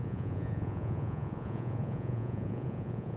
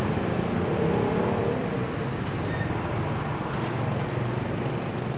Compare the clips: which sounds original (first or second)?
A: second